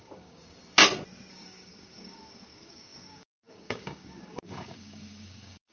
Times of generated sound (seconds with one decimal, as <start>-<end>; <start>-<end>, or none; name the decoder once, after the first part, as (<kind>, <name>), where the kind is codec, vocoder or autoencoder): 0.0-0.8 (codec, DAC); 1.3-5.7

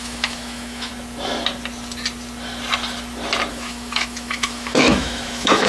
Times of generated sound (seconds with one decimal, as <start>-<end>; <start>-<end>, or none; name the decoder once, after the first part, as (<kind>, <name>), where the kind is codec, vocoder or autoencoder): 0.0-0.9 (autoencoder, DAC-VAE); 3.5-5.7

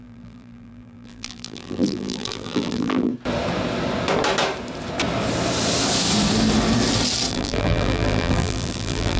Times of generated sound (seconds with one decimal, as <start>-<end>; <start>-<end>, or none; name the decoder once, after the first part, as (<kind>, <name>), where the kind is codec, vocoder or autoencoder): 0.0-3.1 (vocoder, BigVGAN v2); 7.3-9.2